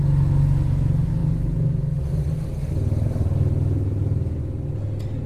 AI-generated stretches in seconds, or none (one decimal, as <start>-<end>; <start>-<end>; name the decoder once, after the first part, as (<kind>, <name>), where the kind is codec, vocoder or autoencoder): none